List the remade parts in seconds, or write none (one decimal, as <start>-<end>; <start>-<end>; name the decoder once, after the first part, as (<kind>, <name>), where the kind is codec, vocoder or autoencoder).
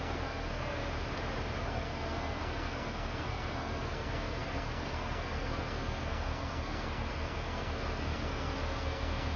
0.0-0.8 (codec, SNAC); 1.6-9.4